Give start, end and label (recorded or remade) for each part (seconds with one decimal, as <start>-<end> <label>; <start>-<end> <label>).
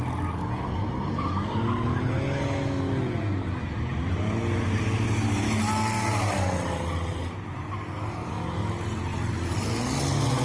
0.0-9.1 recorded; 9.1-9.7 remade; 9.7-10.4 recorded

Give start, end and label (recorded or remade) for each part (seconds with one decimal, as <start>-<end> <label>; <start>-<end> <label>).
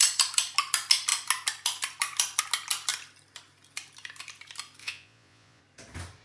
0.0-4.8 recorded; 4.8-5.6 remade; 5.6-6.2 recorded